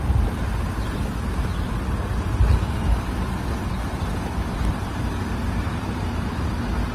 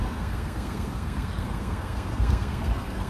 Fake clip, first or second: second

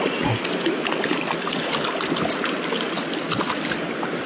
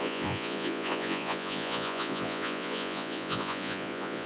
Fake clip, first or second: second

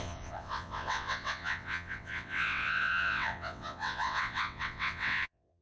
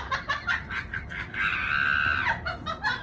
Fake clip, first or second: first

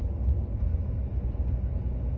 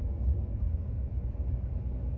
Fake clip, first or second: second